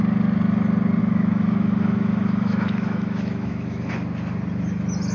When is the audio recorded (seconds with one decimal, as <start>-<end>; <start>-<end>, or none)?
0.0-1.0; 3.9-5.1